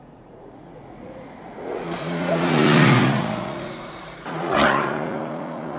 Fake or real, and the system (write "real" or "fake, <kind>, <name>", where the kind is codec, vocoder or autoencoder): fake, vocoder, Vocos